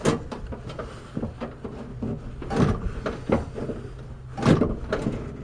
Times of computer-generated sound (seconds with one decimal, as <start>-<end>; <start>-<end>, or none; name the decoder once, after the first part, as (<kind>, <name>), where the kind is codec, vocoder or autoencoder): none